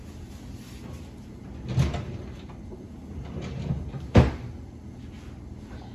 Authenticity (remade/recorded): recorded